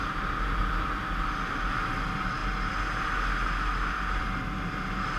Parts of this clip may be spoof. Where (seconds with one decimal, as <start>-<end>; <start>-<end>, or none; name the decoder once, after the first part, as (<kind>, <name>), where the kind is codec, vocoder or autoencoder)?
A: none